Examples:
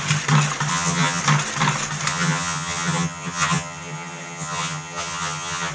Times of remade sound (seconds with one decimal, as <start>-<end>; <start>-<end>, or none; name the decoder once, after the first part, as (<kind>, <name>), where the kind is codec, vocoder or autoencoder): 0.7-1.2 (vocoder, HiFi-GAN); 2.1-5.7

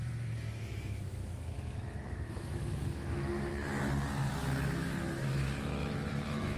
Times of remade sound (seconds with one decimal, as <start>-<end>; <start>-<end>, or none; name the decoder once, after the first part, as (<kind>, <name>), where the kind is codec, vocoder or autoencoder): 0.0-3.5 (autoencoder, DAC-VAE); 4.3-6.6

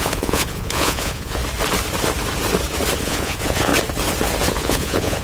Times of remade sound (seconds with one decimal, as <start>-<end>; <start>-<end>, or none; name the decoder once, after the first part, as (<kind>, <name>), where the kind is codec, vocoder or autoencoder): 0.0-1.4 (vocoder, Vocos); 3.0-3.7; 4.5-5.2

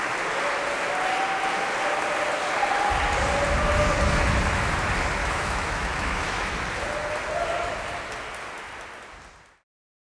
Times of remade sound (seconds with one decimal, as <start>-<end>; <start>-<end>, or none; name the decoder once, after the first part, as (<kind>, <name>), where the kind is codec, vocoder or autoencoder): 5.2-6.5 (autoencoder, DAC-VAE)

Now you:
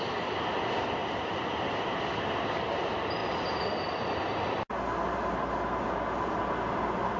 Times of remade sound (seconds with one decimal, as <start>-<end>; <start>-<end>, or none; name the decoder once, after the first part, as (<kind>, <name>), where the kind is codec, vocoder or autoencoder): none